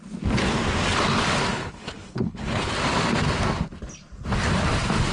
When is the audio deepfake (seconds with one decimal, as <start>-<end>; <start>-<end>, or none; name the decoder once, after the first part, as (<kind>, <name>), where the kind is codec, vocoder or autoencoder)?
1.5-2.7 (codec, HILCodec)